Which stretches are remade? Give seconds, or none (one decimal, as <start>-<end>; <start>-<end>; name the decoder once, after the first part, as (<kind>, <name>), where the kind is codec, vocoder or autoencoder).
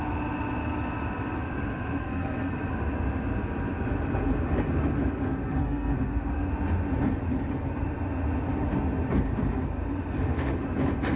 2.0-2.7 (codec, SNAC); 5.6-6.5